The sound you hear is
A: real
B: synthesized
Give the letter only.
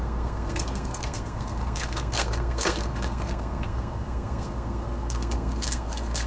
B